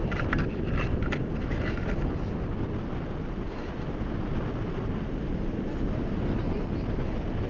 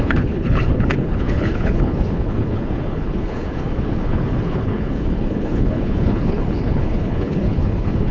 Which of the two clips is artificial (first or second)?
second